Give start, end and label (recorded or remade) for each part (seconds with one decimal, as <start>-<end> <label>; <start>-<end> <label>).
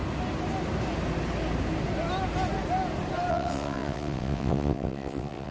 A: 0.0-3.3 recorded; 3.3-5.5 remade